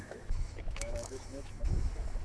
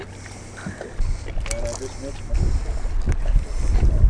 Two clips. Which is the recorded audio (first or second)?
second